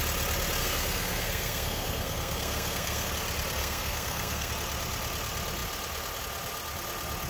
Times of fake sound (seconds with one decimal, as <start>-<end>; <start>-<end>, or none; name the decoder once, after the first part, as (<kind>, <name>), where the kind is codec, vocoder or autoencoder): 0.6-3.1 (codec, SNAC); 3.6-4.5